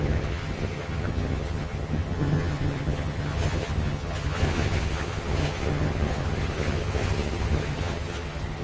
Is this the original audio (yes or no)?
no